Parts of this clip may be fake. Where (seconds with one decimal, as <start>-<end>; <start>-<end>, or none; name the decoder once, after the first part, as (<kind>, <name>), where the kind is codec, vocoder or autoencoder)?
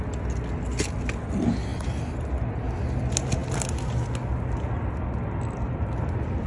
none